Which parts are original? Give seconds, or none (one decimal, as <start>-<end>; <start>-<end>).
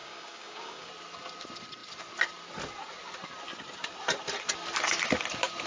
0.9-5.7